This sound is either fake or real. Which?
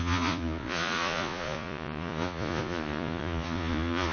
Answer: fake